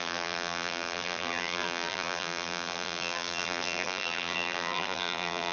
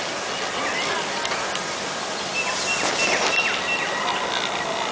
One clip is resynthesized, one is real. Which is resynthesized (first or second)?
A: first